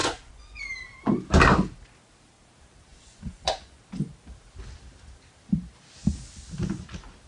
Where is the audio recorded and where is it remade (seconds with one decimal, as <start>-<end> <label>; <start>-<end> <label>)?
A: 0.0-0.6 remade; 0.6-2.9 recorded; 2.9-3.8 remade; 3.8-7.3 recorded